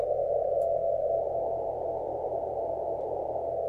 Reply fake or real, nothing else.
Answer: real